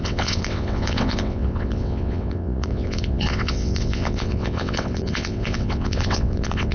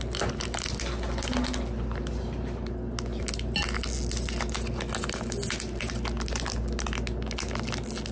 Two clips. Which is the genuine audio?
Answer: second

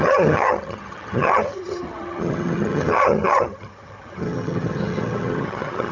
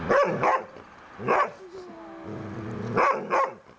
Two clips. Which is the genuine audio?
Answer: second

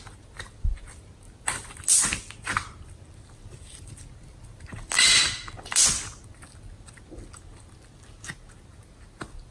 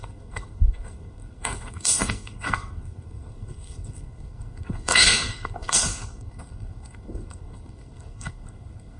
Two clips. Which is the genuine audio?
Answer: first